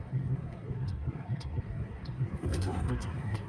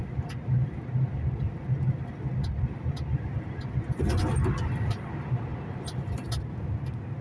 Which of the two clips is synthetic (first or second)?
first